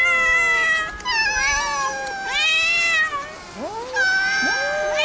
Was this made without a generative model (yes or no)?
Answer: yes